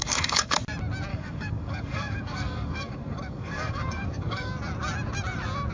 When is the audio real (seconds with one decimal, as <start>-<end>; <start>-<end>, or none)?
0.6-1.1; 4.5-5.7